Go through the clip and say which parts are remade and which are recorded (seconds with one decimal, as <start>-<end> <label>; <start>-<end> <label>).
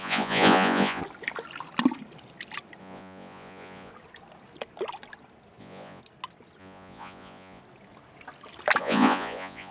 0.0-1.0 remade; 1.0-2.8 recorded; 2.8-3.9 remade; 3.9-5.6 recorded; 5.6-6.0 remade; 6.0-6.6 recorded; 6.6-7.6 remade; 7.6-8.8 recorded; 8.8-9.7 remade